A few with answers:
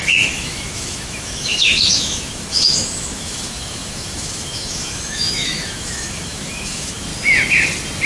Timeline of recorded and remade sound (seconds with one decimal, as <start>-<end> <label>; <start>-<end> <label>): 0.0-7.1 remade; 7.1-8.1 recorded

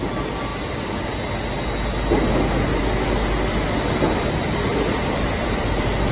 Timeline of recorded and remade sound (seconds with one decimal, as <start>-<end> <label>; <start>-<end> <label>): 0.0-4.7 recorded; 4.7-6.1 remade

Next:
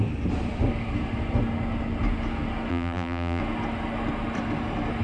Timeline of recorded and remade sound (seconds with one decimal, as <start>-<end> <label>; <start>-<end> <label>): 0.0-2.7 recorded; 2.7-3.4 remade; 3.4-5.0 recorded

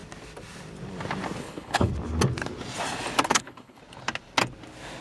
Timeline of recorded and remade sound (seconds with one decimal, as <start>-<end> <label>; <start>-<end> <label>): 0.0-1.4 recorded; 1.4-1.9 remade; 1.9-3.3 recorded; 3.3-3.8 remade; 3.8-5.0 recorded

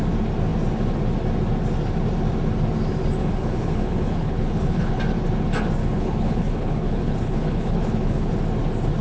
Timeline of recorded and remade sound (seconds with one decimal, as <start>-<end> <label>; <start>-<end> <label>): 0.0-3.2 recorded; 3.2-5.0 remade; 5.0-5.8 recorded; 5.8-8.3 remade; 8.3-9.0 recorded

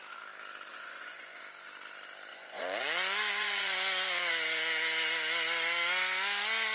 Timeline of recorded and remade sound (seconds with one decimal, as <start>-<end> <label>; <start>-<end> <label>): 0.0-0.7 recorded; 0.7-1.4 remade; 1.4-2.3 recorded; 2.3-4.3 remade; 4.3-6.7 recorded

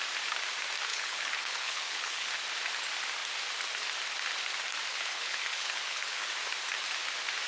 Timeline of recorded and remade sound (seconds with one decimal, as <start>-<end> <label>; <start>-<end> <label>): 0.0-0.9 recorded; 0.9-2.3 remade; 2.3-4.9 recorded; 4.9-6.3 remade; 6.3-7.5 recorded

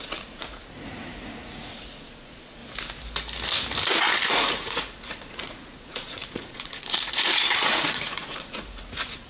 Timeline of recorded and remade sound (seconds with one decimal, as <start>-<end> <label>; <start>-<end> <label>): 0.0-2.6 remade; 2.6-4.3 recorded; 4.3-9.3 remade